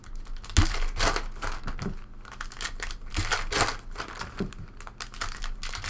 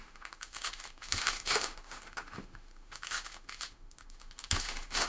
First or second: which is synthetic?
second